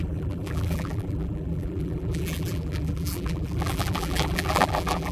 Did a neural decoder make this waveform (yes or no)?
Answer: yes